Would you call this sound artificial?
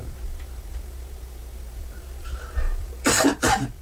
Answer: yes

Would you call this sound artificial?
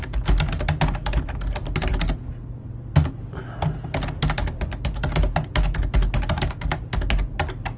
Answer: no